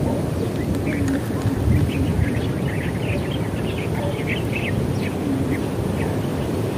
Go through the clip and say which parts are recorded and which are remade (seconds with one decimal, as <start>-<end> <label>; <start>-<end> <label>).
0.0-2.1 recorded; 2.1-3.1 remade; 3.1-6.3 recorded; 6.3-6.8 remade